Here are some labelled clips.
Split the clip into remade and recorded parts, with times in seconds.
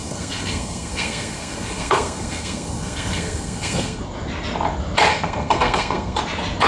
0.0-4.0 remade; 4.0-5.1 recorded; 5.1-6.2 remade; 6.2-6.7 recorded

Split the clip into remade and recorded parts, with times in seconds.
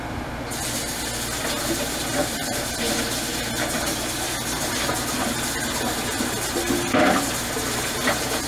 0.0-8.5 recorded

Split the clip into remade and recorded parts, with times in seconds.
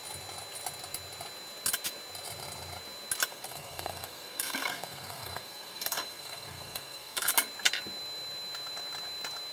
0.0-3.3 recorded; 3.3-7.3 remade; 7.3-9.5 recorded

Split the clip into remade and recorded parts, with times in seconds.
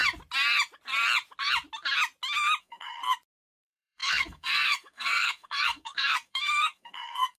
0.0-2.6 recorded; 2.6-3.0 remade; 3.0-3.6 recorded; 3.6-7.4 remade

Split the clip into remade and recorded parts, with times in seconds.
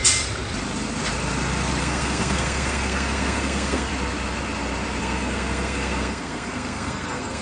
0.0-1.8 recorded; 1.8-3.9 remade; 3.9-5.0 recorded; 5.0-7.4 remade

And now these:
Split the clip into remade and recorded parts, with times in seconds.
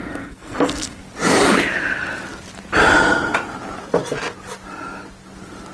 0.0-1.0 remade; 1.0-5.7 recorded